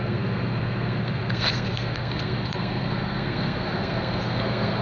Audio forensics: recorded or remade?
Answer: remade